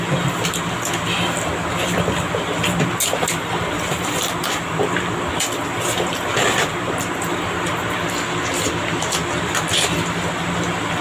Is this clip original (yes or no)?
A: yes